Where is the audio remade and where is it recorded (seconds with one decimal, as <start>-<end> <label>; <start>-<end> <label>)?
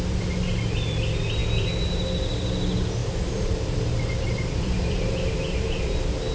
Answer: 0.0-3.0 recorded; 3.0-5.8 remade; 5.8-6.3 recorded